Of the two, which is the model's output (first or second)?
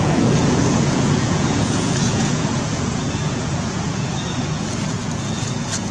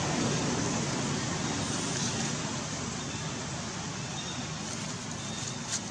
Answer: first